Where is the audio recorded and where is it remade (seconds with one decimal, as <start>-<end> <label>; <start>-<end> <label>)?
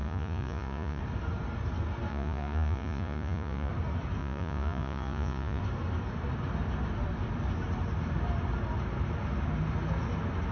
0.0-1.0 remade; 1.0-2.1 recorded; 2.1-3.7 remade; 3.7-4.2 recorded; 4.2-5.6 remade; 5.6-10.5 recorded